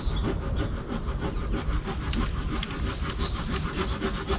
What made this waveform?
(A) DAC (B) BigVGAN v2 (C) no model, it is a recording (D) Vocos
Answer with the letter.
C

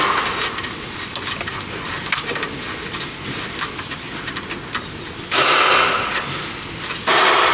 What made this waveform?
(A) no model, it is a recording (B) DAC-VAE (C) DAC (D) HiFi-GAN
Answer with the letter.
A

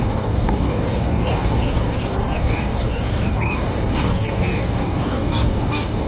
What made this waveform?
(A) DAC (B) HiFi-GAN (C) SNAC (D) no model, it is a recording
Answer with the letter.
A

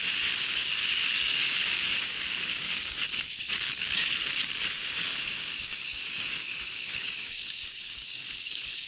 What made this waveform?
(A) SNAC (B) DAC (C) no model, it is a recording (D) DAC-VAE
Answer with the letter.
B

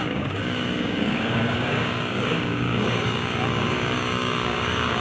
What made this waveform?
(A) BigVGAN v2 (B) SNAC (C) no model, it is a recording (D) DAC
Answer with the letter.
D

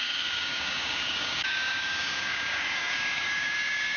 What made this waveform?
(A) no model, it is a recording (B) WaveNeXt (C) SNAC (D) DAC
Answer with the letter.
D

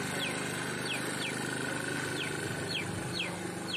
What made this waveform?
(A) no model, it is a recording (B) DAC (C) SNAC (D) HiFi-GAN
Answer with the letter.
A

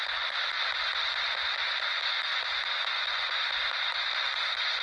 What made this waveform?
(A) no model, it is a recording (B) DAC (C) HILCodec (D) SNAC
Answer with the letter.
A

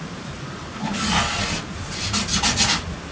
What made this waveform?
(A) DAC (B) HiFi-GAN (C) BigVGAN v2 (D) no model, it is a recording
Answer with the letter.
D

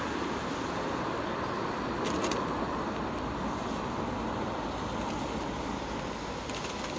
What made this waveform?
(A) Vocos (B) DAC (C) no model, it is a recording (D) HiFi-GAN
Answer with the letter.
C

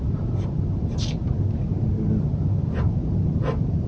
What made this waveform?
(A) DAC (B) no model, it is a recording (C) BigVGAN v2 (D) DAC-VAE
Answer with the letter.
B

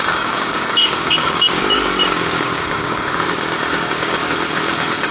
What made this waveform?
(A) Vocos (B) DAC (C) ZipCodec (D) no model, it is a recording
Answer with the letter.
B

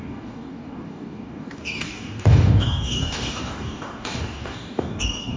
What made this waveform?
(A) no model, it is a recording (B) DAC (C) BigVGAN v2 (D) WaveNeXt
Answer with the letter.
B